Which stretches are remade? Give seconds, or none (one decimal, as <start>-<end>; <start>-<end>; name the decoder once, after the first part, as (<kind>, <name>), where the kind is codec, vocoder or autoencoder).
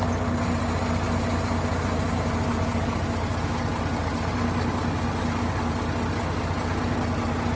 none